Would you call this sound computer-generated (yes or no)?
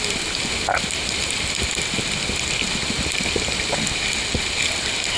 no